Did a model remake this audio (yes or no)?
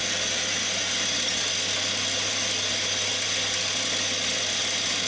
no